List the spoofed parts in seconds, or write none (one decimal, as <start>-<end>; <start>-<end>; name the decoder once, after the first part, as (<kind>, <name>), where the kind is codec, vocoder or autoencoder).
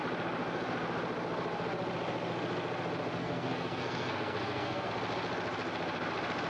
3.2-4.9 (codec, SNAC)